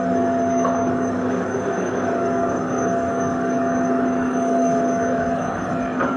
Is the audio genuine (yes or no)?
no